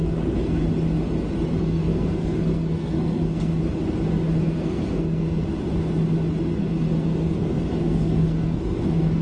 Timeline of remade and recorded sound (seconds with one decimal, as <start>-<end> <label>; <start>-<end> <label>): 0.0-0.6 remade; 0.6-1.6 recorded; 1.6-3.5 remade; 3.5-4.4 recorded; 4.4-5.5 remade; 5.5-6.4 recorded; 6.4-9.2 remade